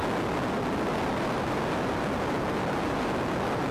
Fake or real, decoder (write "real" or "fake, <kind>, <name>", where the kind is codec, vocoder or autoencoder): real